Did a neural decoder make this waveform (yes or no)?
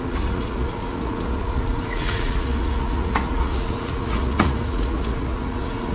yes